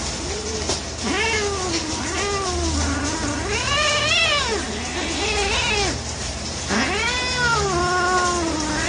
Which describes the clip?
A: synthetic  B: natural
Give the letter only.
B